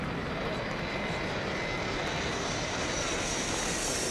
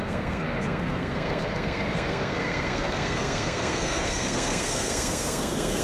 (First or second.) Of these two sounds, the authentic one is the first